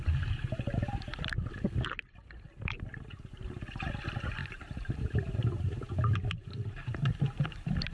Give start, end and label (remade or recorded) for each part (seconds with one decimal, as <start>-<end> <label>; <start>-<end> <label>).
0.0-4.4 recorded; 4.4-5.9 remade; 5.9-7.9 recorded